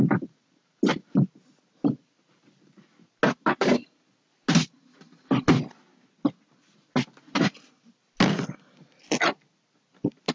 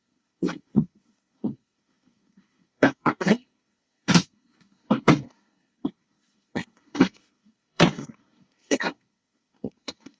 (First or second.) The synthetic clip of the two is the second